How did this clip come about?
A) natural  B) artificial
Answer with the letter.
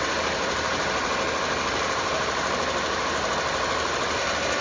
A